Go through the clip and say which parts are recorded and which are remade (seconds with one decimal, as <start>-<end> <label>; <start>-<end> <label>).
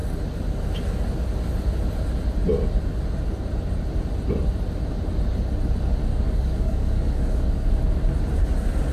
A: 0.0-6.1 recorded; 6.1-7.8 remade; 7.8-8.9 recorded